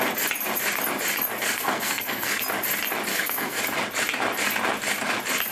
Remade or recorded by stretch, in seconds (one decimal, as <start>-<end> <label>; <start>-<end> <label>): 0.0-1.4 recorded; 1.4-2.4 remade; 2.4-3.1 recorded; 3.1-3.6 remade; 3.6-5.5 recorded